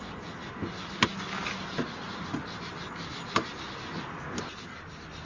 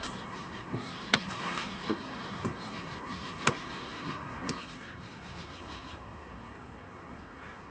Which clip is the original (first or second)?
first